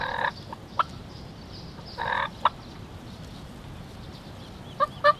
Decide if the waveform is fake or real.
real